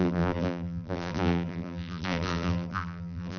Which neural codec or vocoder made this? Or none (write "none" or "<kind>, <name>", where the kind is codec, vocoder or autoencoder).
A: vocoder, BigVGAN v2